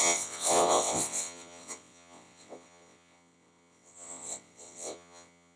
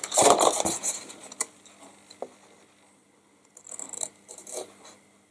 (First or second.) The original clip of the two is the second